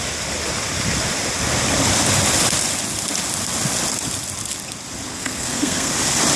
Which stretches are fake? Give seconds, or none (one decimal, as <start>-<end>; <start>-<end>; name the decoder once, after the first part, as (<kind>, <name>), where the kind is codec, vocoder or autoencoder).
5.1-5.9 (codec, SNAC)